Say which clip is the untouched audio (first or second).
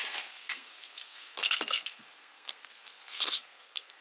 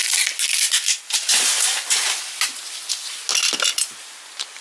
second